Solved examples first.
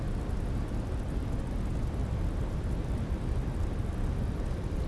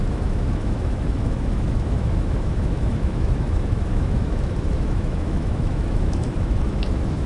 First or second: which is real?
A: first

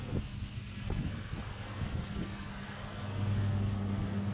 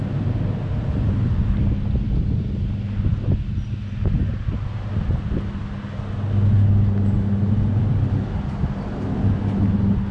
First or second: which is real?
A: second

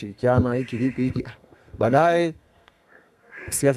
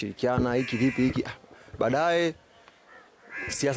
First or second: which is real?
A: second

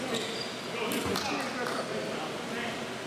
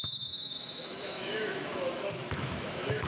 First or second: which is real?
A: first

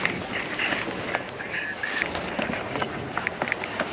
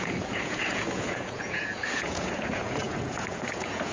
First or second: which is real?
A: first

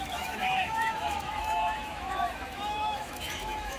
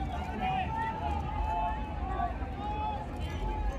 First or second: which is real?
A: second